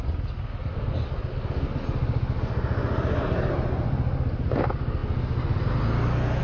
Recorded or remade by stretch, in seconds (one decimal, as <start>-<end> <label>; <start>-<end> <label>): 0.0-6.4 recorded